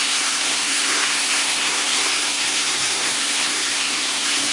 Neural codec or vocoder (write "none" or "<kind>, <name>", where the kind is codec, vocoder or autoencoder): codec, SNAC